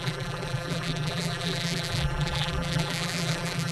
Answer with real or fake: fake